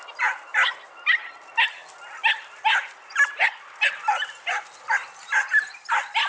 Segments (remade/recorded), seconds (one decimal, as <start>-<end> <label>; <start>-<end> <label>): 0.0-6.3 recorded